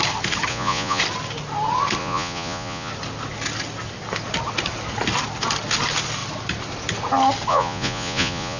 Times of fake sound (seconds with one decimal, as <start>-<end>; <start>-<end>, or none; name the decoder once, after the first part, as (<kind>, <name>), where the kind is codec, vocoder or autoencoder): 0.5-1.0 (vocoder, Vocos); 2.0-2.9; 7.5-8.6